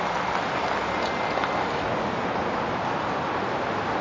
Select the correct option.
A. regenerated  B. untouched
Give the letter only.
B